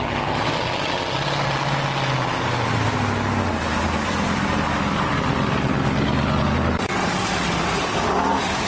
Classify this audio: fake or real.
real